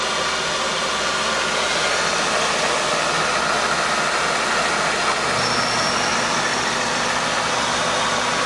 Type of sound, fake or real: real